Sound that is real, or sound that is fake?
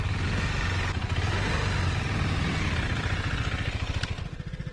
real